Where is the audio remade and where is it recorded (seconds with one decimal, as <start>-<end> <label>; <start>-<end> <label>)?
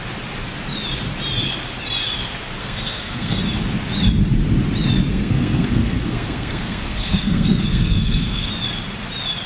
0.0-2.6 recorded; 2.6-3.4 remade; 3.4-5.1 recorded; 5.1-8.5 remade; 8.5-9.5 recorded